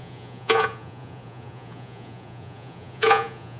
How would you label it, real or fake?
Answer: fake